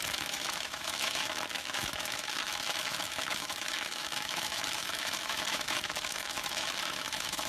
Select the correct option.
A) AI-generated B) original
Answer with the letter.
A